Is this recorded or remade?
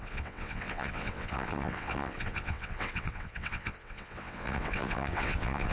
remade